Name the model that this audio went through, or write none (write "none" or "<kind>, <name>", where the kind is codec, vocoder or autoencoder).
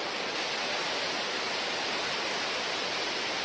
none